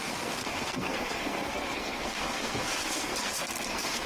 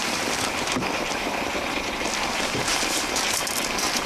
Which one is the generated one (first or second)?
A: first